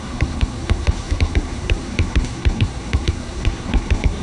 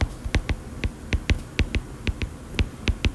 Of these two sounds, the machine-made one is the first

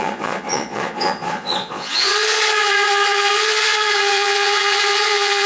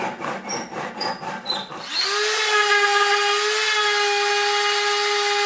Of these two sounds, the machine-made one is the first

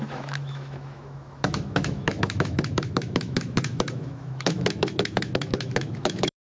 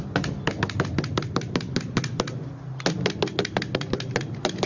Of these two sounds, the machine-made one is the first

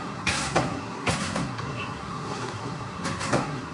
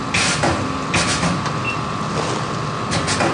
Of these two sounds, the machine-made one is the first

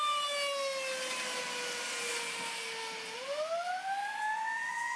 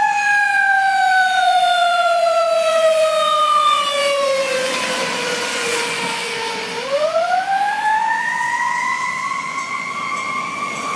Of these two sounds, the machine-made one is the second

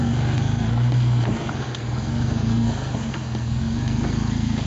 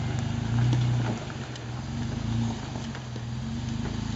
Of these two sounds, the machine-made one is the first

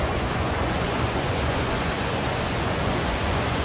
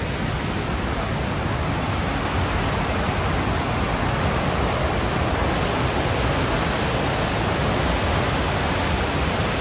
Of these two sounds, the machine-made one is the first